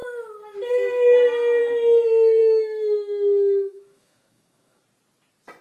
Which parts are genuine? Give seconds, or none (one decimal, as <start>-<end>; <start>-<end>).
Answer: 0.0-2.4; 4.8-5.6